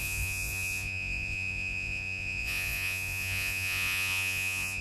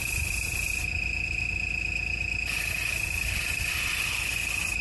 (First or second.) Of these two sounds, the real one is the second